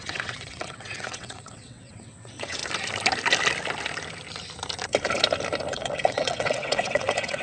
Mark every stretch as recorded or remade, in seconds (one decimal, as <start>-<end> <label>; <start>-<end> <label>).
0.0-2.6 remade; 2.6-5.7 recorded; 5.7-7.4 remade